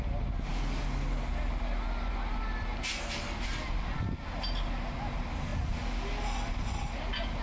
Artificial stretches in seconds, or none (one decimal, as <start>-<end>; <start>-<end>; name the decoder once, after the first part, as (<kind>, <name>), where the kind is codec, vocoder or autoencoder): none